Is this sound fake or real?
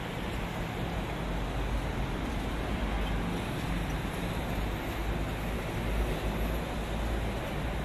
real